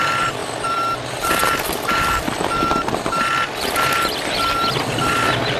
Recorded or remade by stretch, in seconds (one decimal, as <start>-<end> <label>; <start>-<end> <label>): 0.0-0.4 remade; 0.4-1.0 recorded; 1.0-1.4 remade; 1.4-4.8 recorded; 4.8-5.6 remade